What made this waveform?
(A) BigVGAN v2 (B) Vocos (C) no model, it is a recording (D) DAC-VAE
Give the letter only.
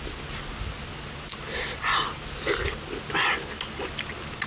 C